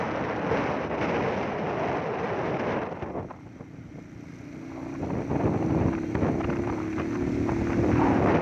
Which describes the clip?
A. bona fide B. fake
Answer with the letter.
A